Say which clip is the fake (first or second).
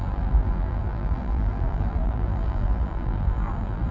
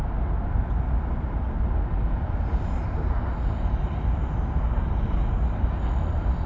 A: first